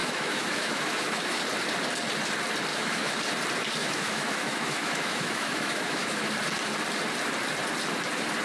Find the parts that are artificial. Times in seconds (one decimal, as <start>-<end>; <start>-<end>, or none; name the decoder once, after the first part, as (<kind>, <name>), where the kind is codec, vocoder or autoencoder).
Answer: 0.0-1.4 (autoencoder, DAC-VAE); 2.7-3.2; 3.8-6.3